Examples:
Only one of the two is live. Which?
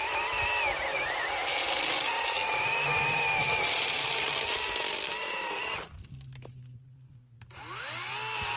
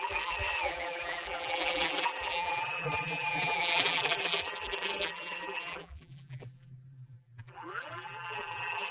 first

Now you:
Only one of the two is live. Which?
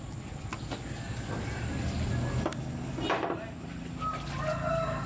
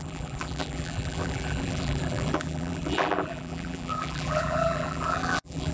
first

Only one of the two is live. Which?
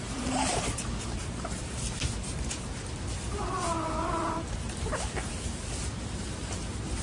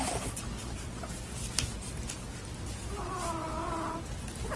second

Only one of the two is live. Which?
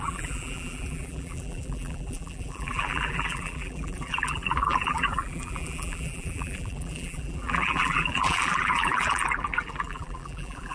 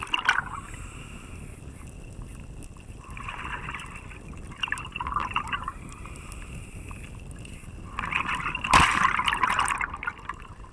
second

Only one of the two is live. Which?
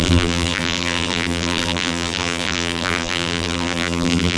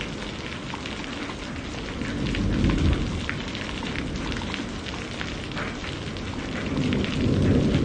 second